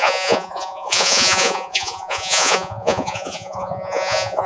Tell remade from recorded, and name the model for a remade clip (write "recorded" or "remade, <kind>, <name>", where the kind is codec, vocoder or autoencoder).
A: remade, vocoder, Vocos